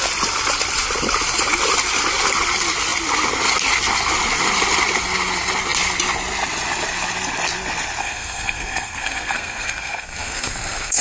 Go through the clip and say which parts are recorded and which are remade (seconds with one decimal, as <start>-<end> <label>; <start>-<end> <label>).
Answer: 0.0-8.0 recorded; 8.0-11.0 remade